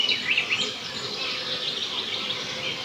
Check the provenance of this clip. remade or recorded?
recorded